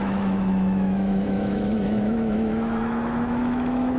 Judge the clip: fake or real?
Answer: fake